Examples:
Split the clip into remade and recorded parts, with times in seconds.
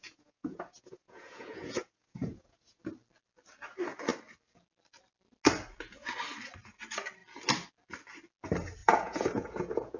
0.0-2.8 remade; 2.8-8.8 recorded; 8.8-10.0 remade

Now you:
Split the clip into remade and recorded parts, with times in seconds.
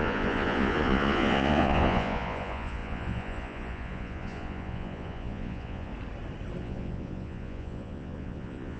0.0-5.9 remade; 5.9-6.6 recorded; 6.6-8.8 remade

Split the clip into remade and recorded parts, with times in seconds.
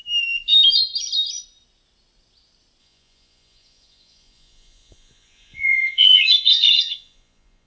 0.0-2.8 recorded; 2.8-7.7 remade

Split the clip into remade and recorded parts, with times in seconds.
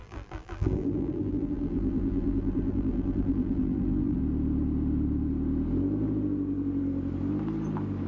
0.0-4.2 remade; 4.2-8.1 recorded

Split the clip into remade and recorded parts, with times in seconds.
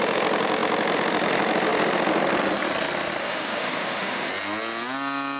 0.0-3.2 recorded; 3.2-4.3 remade; 4.3-5.4 recorded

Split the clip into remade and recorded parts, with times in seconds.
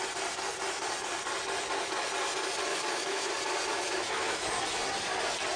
0.0-2.7 recorded; 2.7-3.3 remade; 3.3-3.7 recorded; 3.7-4.5 remade; 4.5-5.6 recorded